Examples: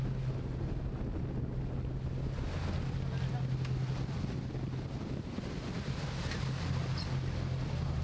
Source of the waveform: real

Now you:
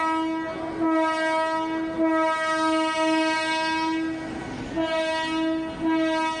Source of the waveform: real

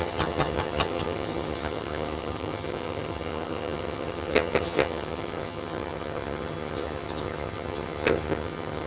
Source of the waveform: fake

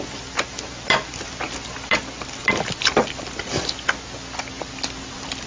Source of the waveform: real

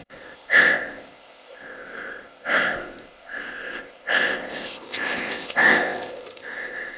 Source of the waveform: fake